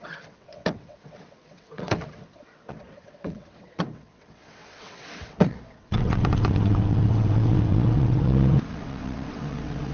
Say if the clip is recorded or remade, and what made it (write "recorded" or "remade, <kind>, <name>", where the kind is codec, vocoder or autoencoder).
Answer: remade, vocoder, WaveNeXt